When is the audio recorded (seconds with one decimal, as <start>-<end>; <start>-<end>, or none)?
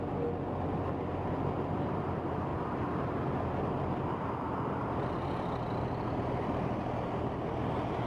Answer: 0.0-8.1